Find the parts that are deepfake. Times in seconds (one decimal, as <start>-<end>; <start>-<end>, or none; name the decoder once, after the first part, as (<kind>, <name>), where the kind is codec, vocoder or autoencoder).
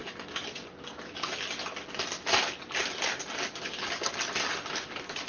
none